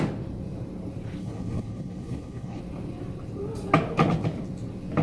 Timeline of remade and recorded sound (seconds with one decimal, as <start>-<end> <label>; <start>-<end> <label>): 0.0-1.2 recorded; 1.2-2.6 remade; 2.6-5.0 recorded